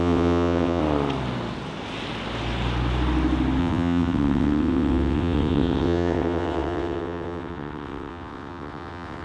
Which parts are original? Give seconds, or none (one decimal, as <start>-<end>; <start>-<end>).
0.8-3.6